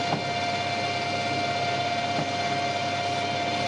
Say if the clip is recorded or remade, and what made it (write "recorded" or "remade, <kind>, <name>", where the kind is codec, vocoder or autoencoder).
recorded